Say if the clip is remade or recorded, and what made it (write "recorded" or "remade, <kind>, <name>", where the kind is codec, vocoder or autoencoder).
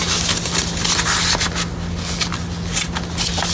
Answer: recorded